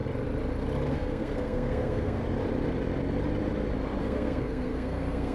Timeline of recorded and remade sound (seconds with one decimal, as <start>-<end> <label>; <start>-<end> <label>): 0.0-0.9 recorded; 0.9-2.2 remade; 2.2-4.0 recorded; 4.0-5.3 remade